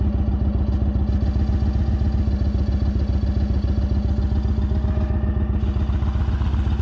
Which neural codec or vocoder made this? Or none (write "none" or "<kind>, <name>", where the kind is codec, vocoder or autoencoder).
none